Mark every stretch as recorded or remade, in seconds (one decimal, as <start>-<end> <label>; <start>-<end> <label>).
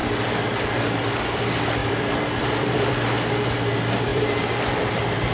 0.0-1.8 recorded; 1.8-2.9 remade; 2.9-4.1 recorded; 4.1-4.8 remade; 4.8-5.3 recorded